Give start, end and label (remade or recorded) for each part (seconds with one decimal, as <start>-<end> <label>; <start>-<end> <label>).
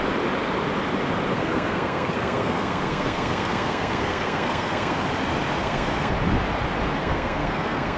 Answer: 0.0-1.3 recorded; 1.3-5.0 remade; 5.0-5.6 recorded; 5.6-6.1 remade; 6.1-7.0 recorded; 7.0-8.0 remade